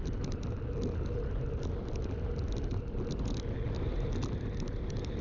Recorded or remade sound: recorded